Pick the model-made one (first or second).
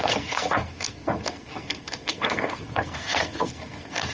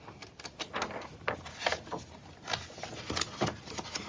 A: first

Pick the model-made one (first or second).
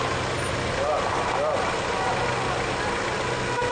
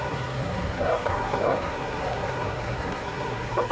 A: second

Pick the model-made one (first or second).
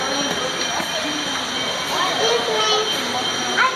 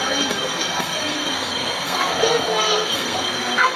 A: second